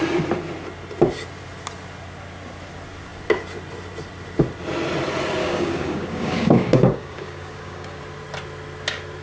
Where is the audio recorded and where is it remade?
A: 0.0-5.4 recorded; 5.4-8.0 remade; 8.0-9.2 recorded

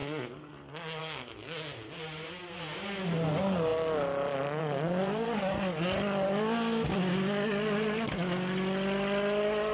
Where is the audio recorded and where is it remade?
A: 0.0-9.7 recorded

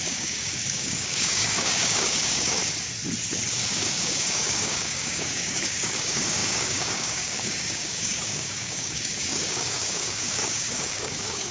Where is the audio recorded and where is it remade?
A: 0.0-2.6 remade; 2.6-3.5 recorded; 3.5-11.5 remade

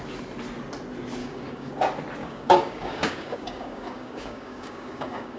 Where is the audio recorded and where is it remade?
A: 0.0-1.2 recorded; 1.2-1.7 remade; 1.7-2.2 recorded; 2.2-5.4 remade

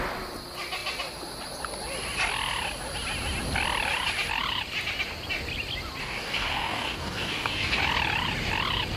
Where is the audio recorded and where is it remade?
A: 0.0-6.0 recorded; 6.0-7.8 remade; 7.8-9.0 recorded

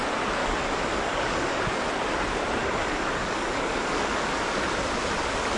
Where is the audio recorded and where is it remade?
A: 0.0-0.4 recorded; 0.4-1.6 remade; 1.6-2.6 recorded; 2.6-4.4 remade; 4.4-5.6 recorded